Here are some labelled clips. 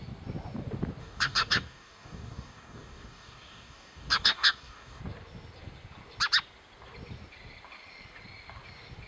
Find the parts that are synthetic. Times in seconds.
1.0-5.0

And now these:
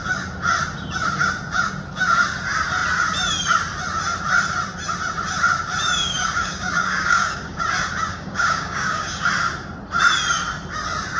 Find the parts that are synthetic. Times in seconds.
6.0-7.6; 8.1-9.3

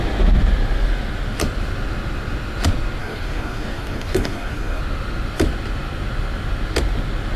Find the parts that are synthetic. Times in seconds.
3.0-4.8

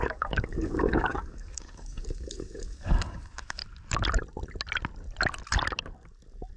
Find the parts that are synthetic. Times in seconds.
0.0-3.6

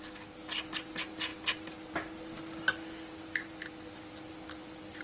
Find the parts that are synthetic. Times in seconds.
none

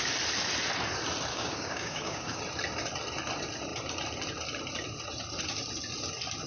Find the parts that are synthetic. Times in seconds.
1.3-2.4

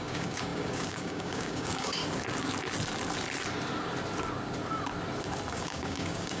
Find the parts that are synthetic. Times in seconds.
0.0-2.0; 5.5-6.4

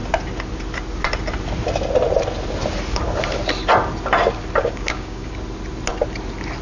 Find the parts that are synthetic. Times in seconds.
4.6-5.3